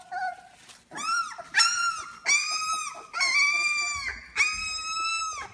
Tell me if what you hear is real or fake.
real